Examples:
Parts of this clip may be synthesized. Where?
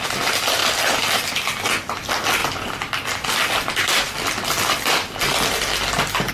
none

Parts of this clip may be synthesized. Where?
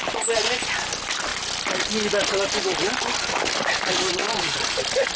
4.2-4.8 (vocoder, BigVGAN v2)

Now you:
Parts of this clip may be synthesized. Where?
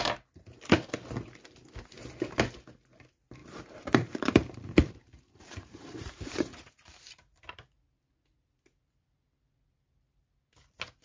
3.4-7.4 (vocoder, BigVGAN v2)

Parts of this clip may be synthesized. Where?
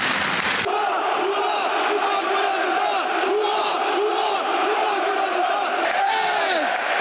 4.1-5.1 (vocoder, BigVGAN v2)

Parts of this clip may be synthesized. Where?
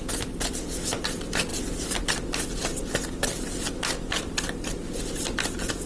1.5-2.1 (vocoder, BigVGAN v2)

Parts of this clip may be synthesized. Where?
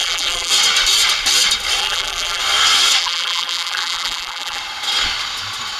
0.0-0.5 (vocoder, BigVGAN v2); 1.8-2.4; 3.0-4.6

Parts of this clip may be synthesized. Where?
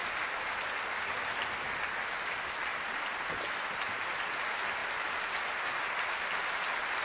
0.0-0.6 (vocoder, BigVGAN v2); 2.7-3.8; 4.8-7.0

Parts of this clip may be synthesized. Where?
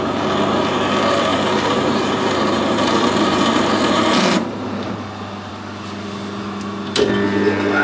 1.3-5.5 (vocoder, BigVGAN v2)